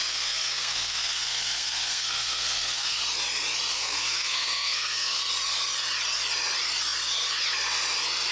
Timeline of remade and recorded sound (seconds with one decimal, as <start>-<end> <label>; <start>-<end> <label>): 0.0-3.0 remade; 3.0-3.7 recorded; 3.7-5.2 remade; 5.2-8.3 recorded